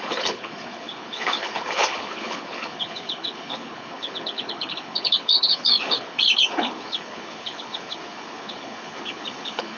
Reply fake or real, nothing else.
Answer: fake